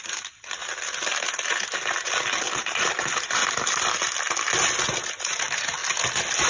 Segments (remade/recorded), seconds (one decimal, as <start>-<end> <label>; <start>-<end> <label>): 0.0-0.6 remade; 0.6-2.2 recorded; 2.2-3.4 remade; 3.4-4.9 recorded; 4.9-6.5 remade